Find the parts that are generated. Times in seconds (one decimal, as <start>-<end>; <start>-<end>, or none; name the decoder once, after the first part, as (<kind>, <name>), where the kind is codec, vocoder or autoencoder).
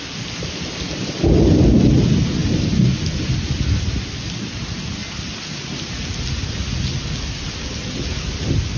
none